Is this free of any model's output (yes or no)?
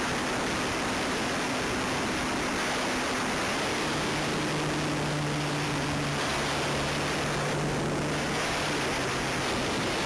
yes